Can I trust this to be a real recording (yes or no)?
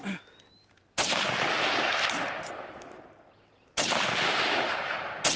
yes